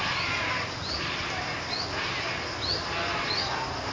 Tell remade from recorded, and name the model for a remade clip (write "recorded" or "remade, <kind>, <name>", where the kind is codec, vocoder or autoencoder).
recorded